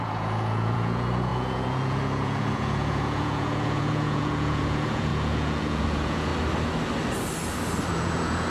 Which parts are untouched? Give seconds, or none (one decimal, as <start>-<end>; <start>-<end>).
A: 6.3-7.9